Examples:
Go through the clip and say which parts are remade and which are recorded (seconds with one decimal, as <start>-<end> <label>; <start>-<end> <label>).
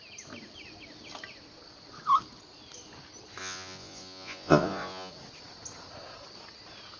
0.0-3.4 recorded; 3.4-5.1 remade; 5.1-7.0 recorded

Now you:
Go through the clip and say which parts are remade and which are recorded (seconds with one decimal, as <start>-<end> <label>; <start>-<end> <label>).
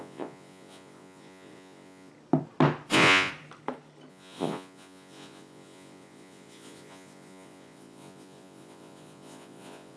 0.0-2.1 remade; 2.1-2.9 recorded; 2.9-3.3 remade; 3.3-4.1 recorded; 4.1-10.0 remade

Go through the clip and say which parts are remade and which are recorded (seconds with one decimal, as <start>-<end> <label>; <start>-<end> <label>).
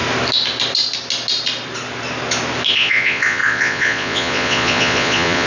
0.0-2.7 recorded; 2.7-5.5 remade